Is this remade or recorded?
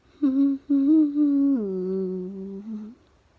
recorded